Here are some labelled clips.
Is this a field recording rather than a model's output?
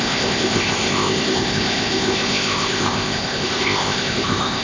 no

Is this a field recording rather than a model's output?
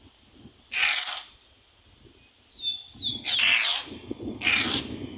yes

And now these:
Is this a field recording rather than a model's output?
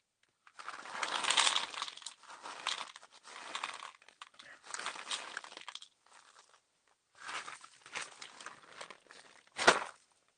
yes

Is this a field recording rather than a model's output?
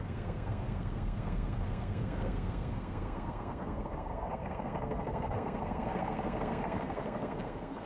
no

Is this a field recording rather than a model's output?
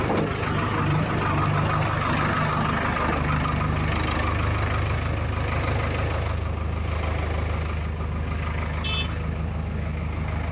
yes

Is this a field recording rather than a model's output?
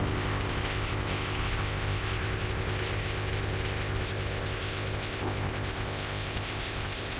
no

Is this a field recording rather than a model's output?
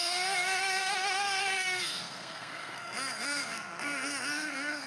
no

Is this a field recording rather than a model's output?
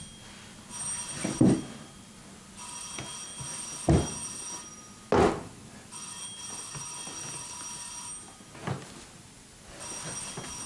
yes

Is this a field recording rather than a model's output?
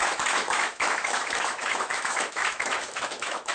no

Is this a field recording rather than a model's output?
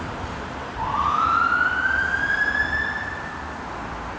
yes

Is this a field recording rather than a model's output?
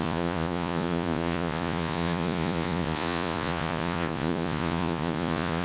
no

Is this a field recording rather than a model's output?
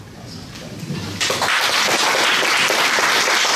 yes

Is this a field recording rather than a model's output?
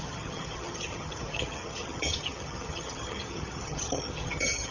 no